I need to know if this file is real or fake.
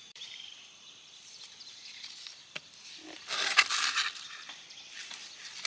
fake